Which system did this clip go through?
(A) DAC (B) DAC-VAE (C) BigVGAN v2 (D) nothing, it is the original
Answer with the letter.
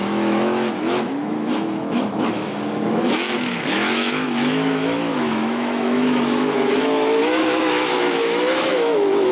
B